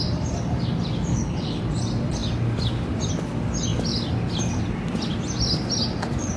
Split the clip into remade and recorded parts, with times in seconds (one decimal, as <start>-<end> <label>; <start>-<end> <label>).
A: 0.0-1.1 recorded; 1.1-1.6 remade; 1.6-6.4 recorded

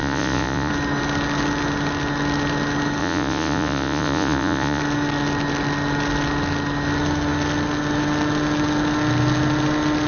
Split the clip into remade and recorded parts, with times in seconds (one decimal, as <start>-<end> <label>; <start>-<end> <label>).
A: 0.0-0.7 remade; 0.7-3.0 recorded; 3.0-4.8 remade; 4.8-10.1 recorded